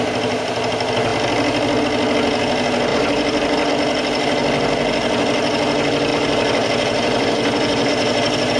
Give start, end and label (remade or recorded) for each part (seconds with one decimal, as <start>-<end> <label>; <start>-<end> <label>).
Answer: 0.0-2.9 recorded; 2.9-3.7 remade; 3.7-6.1 recorded; 6.1-7.9 remade; 7.9-8.6 recorded